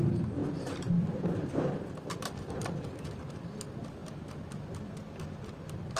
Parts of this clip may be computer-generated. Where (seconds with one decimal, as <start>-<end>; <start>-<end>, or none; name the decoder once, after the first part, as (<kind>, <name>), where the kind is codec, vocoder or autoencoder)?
0.4-2.7 (vocoder, BigVGAN v2); 4.0-4.9